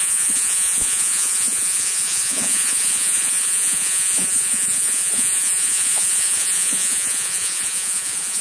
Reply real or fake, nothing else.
fake